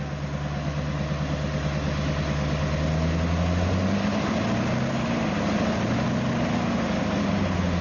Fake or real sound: real